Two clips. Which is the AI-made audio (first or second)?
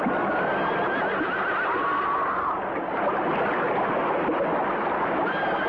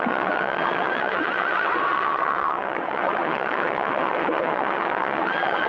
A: second